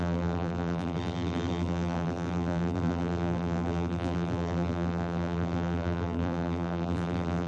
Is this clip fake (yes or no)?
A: yes